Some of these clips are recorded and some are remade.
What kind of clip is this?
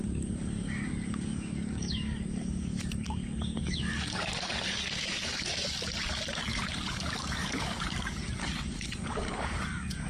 remade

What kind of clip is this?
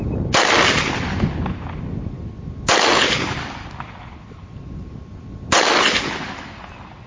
recorded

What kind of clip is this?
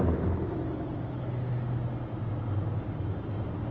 recorded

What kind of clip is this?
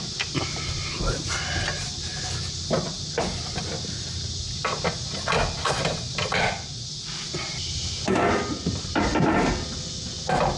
recorded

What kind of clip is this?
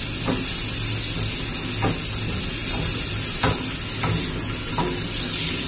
recorded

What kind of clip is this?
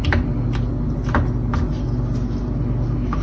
recorded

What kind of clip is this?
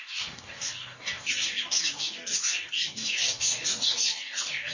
remade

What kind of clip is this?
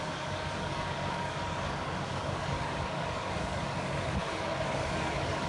remade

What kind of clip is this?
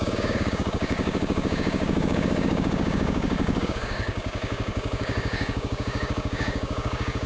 remade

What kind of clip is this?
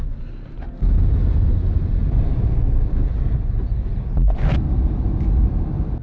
recorded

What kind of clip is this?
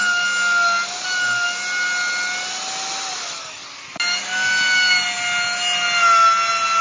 recorded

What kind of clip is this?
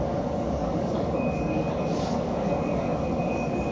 remade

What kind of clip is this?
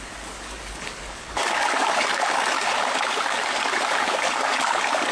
remade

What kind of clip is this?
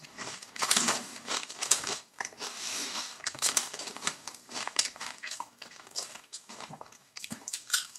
remade